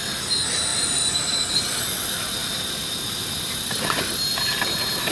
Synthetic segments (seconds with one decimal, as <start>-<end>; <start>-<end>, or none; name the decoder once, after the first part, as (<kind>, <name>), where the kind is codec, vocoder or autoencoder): 0.7-1.8 (vocoder, BigVGAN v2); 2.4-4.3